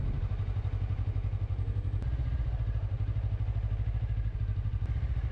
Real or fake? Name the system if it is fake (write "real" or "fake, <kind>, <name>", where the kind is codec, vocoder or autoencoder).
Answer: real